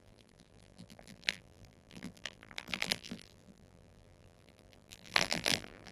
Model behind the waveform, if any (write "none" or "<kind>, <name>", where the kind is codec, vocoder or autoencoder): vocoder, BigVGAN v2